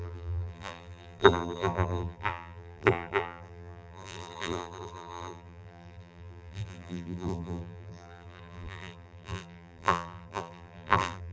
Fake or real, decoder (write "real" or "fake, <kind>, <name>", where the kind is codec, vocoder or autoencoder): fake, vocoder, BigVGAN v2